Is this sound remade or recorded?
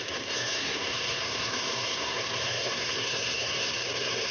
remade